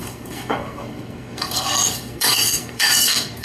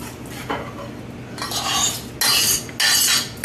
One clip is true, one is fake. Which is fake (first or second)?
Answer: first